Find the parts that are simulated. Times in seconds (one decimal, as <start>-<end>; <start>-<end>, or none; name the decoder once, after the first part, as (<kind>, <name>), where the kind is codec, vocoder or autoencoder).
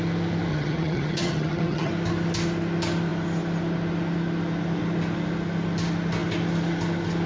0.5-1.9 (vocoder, HiFi-GAN)